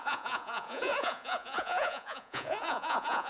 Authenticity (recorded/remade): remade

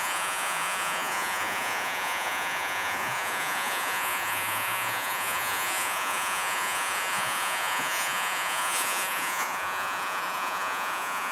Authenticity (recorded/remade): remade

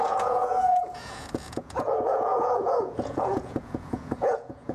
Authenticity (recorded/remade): remade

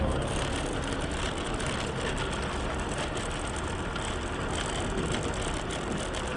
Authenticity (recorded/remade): recorded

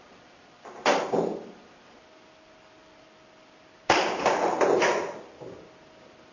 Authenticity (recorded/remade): recorded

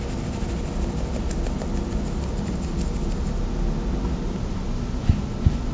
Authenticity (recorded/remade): recorded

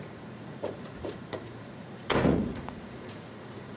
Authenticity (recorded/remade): remade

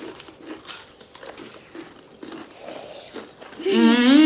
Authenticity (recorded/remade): recorded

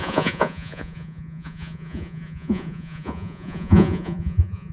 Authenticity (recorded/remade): remade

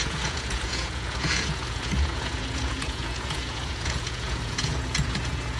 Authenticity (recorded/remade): remade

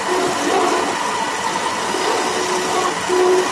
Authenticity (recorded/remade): recorded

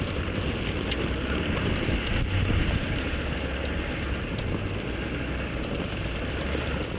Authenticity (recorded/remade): recorded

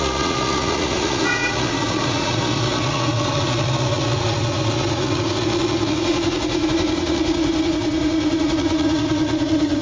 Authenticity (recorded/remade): remade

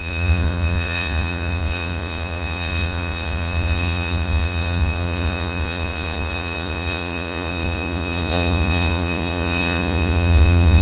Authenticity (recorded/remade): remade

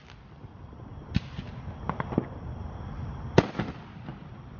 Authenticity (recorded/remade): recorded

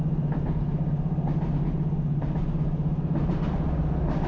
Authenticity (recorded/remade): recorded